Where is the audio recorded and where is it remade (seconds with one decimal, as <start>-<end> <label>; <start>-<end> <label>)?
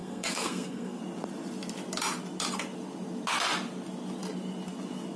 0.0-1.0 remade; 1.0-5.2 recorded